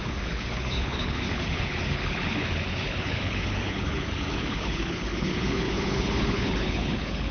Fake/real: fake